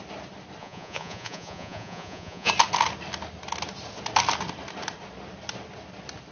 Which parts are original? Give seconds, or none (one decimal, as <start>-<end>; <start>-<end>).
0.0-0.6; 2.5-6.3